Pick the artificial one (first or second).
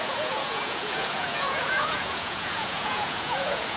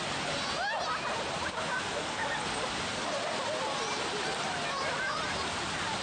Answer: first